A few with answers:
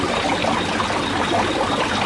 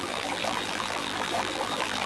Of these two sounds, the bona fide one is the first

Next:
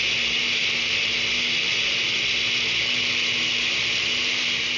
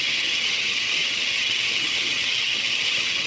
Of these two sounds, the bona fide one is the first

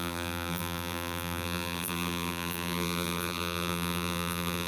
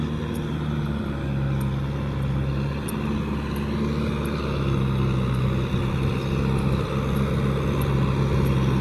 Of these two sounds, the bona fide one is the second